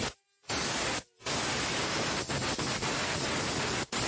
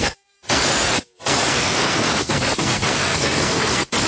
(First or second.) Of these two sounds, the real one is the first